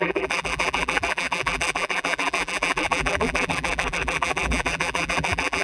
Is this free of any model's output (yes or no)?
no